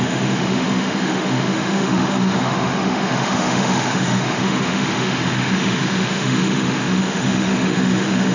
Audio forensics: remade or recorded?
remade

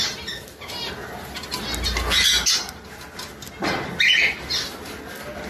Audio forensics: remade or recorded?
recorded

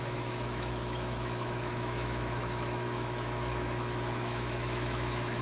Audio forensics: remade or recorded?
remade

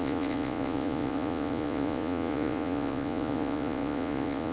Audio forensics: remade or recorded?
remade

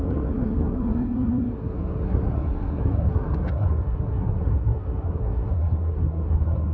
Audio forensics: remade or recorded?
remade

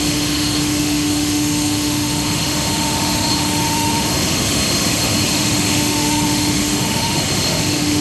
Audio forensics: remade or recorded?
remade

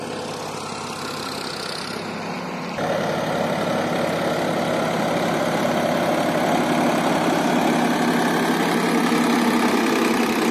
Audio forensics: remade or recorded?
recorded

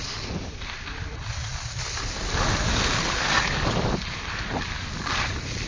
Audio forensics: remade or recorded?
recorded